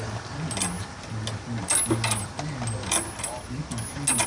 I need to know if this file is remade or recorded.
recorded